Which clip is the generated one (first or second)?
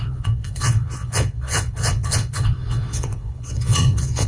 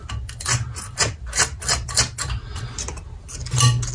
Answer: first